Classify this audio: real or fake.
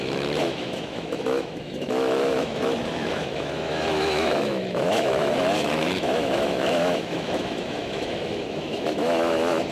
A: fake